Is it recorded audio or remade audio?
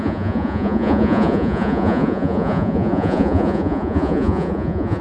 remade